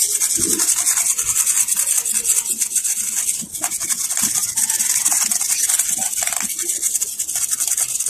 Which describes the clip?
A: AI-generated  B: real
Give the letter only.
B